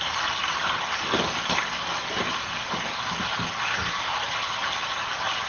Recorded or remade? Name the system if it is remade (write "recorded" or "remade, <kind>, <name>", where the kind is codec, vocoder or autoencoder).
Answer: recorded